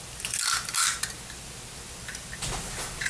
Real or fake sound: real